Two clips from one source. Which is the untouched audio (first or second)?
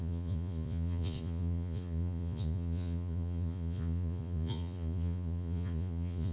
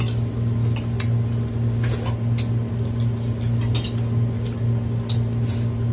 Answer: second